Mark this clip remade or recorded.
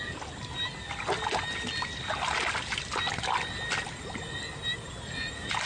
recorded